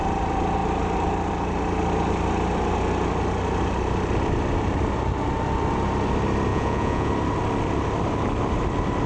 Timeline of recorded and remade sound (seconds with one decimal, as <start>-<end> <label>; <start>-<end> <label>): 0.0-6.5 recorded; 6.5-7.1 remade; 7.1-9.1 recorded